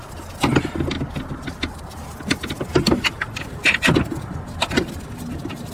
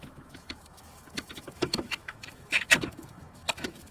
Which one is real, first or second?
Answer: first